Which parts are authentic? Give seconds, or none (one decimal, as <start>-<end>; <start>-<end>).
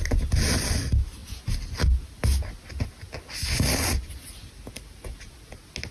0.0-5.9